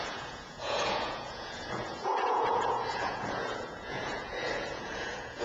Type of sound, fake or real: fake